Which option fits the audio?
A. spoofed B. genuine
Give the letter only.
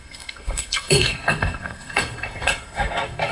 A